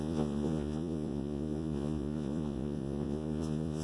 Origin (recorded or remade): remade